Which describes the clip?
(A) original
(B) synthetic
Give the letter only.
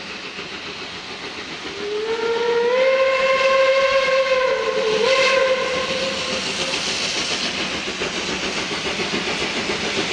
A